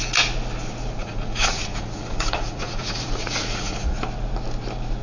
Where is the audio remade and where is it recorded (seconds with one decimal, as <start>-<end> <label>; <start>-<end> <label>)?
0.0-1.0 recorded; 1.0-4.0 remade; 4.0-5.0 recorded